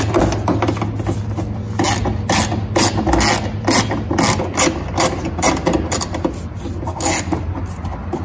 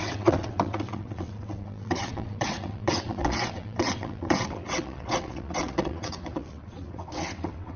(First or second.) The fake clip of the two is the second